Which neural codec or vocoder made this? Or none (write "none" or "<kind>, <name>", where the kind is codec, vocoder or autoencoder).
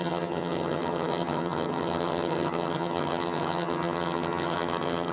vocoder, HiFi-GAN